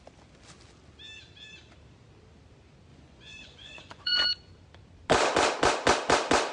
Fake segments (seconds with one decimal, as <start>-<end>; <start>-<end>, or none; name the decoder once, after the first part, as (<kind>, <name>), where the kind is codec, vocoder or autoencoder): 2.9-4.3 (vocoder, Vocos)